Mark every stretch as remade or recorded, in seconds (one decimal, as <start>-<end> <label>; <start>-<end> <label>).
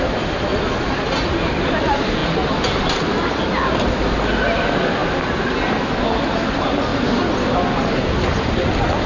0.0-9.1 recorded